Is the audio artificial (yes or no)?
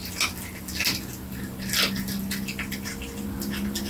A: no